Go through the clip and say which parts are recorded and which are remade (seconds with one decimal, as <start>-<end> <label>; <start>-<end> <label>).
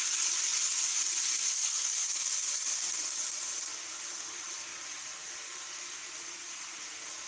0.0-7.3 recorded